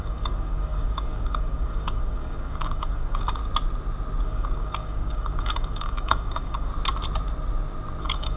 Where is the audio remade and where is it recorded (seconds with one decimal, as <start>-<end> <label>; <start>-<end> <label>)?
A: 0.0-3.4 remade; 3.4-4.2 recorded; 4.2-6.7 remade; 6.7-8.0 recorded; 8.0-8.4 remade